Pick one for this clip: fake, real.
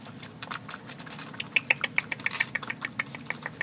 real